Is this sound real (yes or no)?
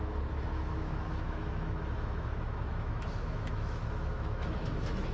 no